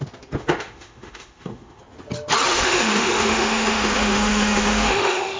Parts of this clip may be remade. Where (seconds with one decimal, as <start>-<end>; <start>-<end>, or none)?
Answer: 0.4-1.8; 2.5-5.4